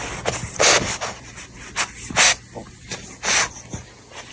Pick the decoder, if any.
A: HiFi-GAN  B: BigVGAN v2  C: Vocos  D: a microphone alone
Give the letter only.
D